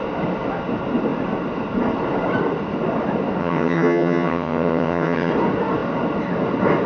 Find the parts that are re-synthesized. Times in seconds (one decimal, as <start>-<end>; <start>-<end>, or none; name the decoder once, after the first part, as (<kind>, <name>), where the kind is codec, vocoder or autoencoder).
3.4-5.3 (vocoder, HiFi-GAN)